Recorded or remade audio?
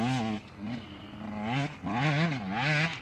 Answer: recorded